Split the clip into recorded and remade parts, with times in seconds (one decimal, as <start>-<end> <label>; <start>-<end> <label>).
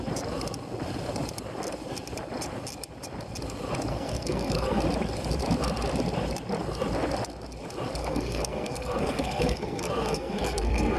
0.0-3.9 recorded; 3.9-4.8 remade; 4.8-8.0 recorded; 8.0-11.0 remade